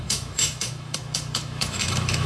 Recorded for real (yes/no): no